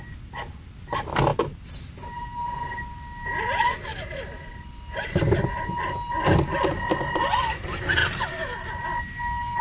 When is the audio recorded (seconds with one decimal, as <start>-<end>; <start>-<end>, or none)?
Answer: 0.0-1.3; 2.5-3.9; 4.9-8.0; 9.0-9.6